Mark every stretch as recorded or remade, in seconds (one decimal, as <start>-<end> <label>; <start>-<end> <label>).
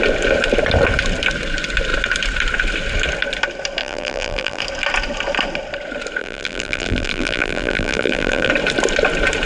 0.0-3.8 recorded; 3.8-4.6 remade; 4.6-6.2 recorded; 6.2-8.5 remade; 8.5-9.5 recorded